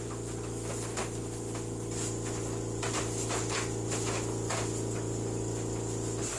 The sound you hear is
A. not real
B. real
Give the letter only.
B